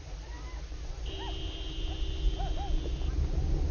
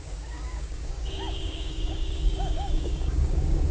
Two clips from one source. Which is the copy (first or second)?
second